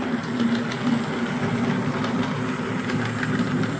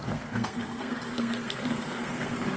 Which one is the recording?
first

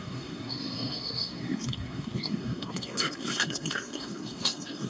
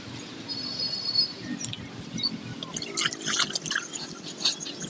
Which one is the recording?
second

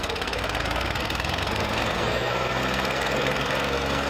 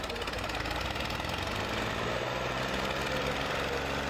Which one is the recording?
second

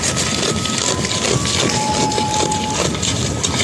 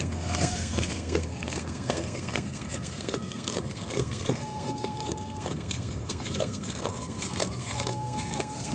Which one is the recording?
first